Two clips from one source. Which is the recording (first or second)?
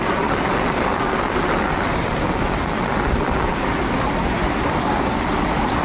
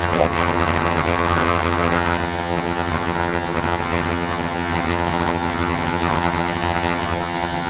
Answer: first